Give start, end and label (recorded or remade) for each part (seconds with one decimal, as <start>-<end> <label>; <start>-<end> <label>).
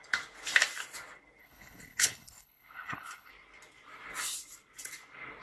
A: 0.0-1.4 recorded; 1.4-3.3 remade; 3.3-5.4 recorded